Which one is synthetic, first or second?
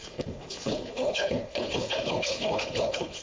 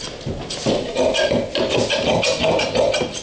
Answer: first